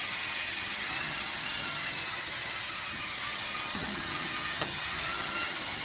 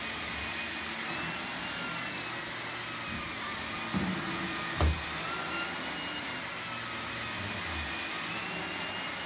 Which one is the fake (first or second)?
first